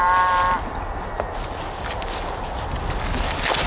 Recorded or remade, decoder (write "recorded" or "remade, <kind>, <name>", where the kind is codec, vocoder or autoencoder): recorded